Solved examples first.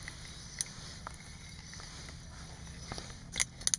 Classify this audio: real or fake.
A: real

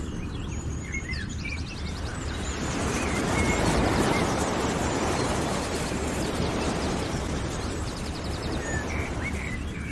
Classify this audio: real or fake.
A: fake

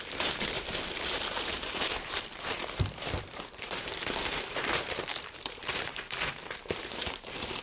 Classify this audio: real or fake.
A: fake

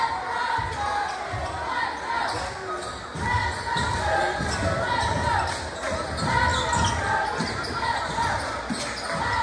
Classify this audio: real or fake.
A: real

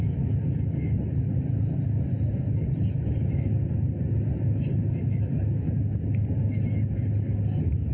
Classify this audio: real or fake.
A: real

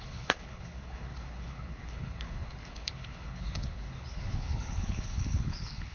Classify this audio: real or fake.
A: fake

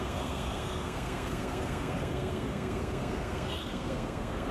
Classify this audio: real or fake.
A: fake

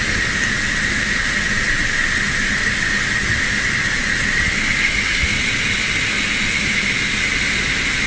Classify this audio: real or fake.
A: real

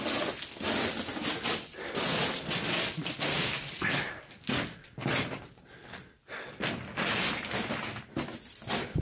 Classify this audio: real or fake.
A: real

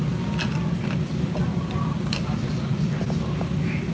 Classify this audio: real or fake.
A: real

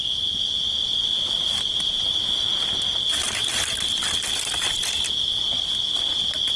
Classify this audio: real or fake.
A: real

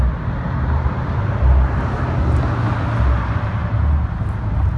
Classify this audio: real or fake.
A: real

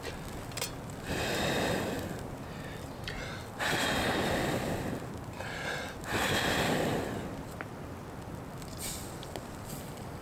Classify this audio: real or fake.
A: real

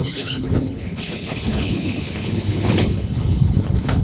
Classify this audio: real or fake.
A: fake